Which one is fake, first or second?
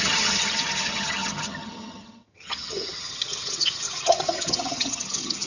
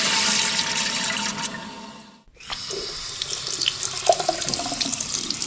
first